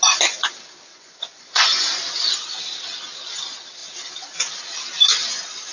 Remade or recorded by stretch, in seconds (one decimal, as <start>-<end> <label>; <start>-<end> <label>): 0.0-0.9 recorded; 0.9-2.0 remade; 2.0-5.7 recorded